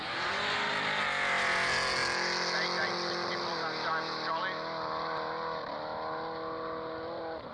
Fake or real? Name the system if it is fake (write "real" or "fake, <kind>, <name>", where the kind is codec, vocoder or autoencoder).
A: real